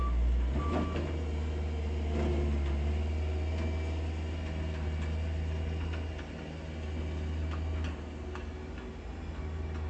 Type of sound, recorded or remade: recorded